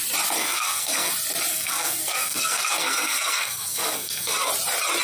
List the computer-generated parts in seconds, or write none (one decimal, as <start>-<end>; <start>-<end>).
0.4-1.1; 1.5-4.5